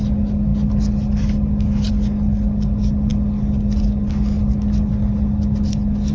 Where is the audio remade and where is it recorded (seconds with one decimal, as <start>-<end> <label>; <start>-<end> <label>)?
0.0-6.1 recorded